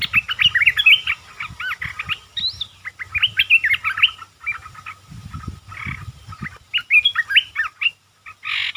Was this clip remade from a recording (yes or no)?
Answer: no